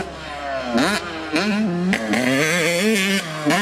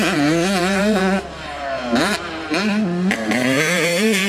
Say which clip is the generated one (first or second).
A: second